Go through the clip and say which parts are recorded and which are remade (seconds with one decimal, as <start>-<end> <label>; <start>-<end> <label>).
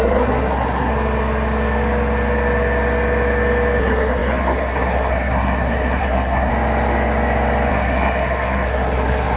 0.0-0.9 remade; 0.9-3.8 recorded; 3.8-6.5 remade; 6.5-7.7 recorded; 7.7-9.4 remade